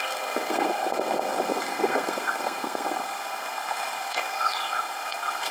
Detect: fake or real fake